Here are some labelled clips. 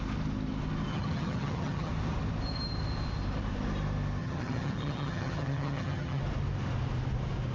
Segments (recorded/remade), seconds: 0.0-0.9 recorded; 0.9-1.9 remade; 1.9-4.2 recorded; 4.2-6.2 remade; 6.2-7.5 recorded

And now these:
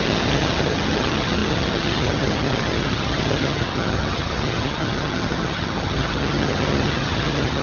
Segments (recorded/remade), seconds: 0.0-7.6 remade

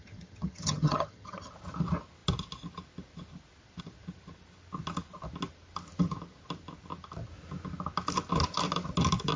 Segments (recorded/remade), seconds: 0.0-1.5 remade; 1.5-9.4 recorded

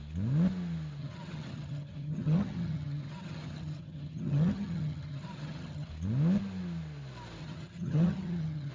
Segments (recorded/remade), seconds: 0.0-1.0 recorded; 1.0-5.9 remade; 5.9-7.4 recorded; 7.4-8.7 remade

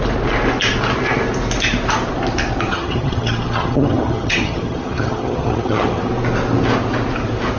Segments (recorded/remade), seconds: 0.0-2.7 recorded; 2.7-6.1 remade; 6.1-7.6 recorded